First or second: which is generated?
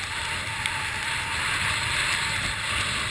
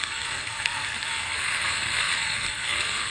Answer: second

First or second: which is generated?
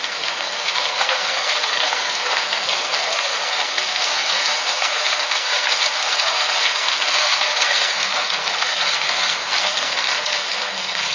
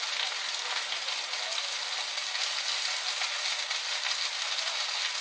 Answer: first